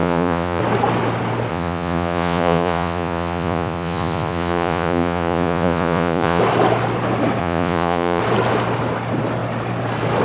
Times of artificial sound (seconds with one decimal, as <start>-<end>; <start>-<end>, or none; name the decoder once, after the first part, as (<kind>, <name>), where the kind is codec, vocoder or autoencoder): 0.0-0.6 (vocoder, Vocos); 1.5-6.4; 7.4-8.2